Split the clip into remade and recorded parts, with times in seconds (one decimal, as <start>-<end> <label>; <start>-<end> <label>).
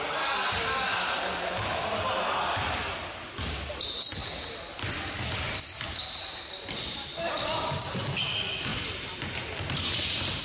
0.0-4.2 recorded; 4.2-7.3 remade; 7.3-8.7 recorded; 8.7-9.4 remade; 9.4-10.4 recorded